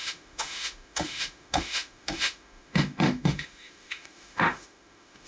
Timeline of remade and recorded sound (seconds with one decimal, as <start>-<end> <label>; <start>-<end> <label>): 0.0-5.3 remade